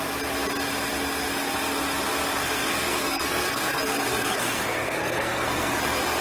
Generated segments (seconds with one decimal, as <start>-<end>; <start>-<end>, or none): 2.4-5.7